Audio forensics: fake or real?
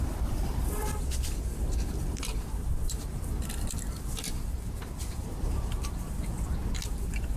fake